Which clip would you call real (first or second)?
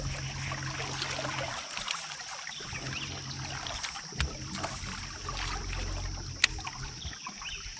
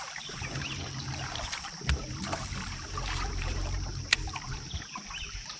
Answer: first